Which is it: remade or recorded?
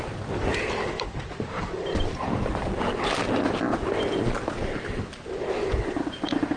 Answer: recorded